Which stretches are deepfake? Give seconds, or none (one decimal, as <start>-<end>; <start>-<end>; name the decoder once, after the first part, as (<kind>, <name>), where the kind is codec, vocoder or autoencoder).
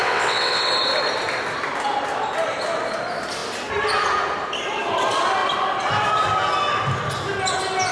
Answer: 0.0-0.7 (vocoder, WaveNeXt)